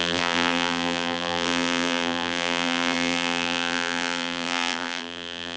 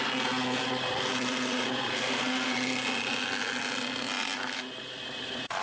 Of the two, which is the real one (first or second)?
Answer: second